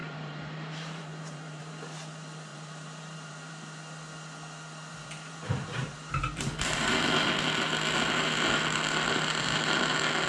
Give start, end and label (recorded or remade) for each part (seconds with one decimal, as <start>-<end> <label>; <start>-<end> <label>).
0.0-1.6 remade; 1.6-2.5 recorded; 2.5-3.6 remade; 3.6-4.9 recorded; 4.9-6.9 remade; 6.9-10.3 recorded